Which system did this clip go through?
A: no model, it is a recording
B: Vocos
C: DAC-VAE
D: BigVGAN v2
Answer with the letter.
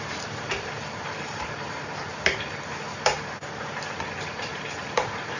D